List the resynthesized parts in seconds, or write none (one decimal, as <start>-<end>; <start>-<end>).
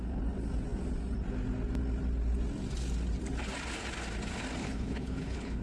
4.6-5.6